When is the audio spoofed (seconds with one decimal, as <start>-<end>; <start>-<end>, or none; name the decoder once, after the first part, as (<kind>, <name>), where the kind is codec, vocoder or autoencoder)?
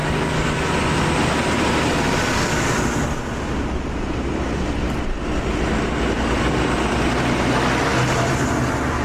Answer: 0.0-0.5 (codec, DAC)